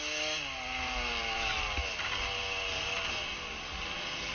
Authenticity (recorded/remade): recorded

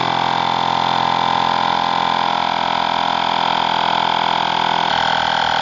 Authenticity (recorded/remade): recorded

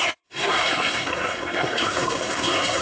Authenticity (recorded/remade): remade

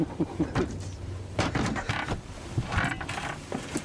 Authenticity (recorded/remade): recorded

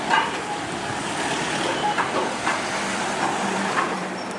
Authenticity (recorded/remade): recorded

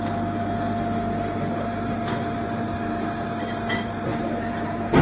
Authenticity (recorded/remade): recorded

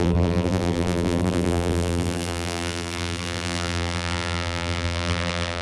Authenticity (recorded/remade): remade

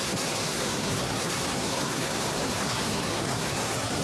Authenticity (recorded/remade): remade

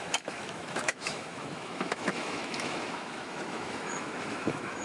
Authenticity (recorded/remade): remade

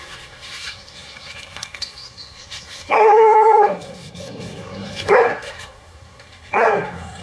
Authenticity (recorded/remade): remade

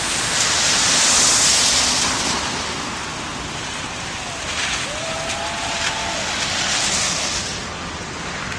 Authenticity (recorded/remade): recorded